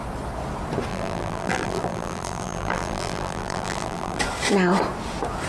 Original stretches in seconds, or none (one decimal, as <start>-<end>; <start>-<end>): 0.0-0.9; 4.2-5.5